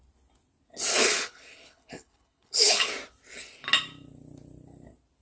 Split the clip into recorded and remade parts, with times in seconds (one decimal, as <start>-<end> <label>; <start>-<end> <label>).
0.0-0.9 recorded; 0.9-2.9 remade; 2.9-5.2 recorded